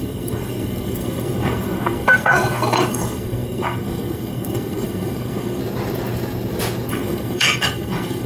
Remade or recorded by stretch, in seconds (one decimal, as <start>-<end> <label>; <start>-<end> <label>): 0.0-5.6 remade; 5.6-6.9 recorded; 6.9-8.3 remade